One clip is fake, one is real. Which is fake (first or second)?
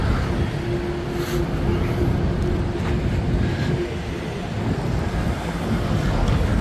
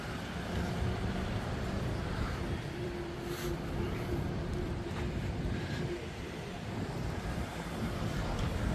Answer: second